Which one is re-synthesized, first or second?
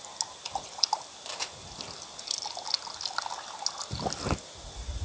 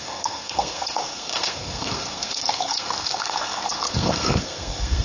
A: second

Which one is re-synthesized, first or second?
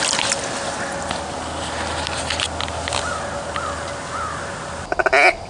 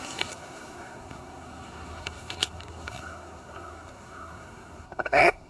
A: second